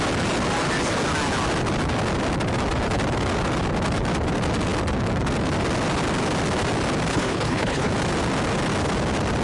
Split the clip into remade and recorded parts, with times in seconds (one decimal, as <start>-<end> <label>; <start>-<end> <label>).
0.0-7.1 recorded; 7.1-7.9 remade; 7.9-9.4 recorded